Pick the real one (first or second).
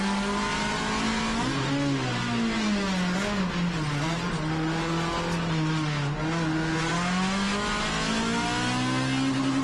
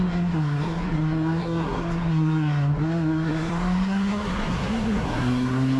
first